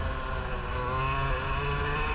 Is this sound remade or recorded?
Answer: recorded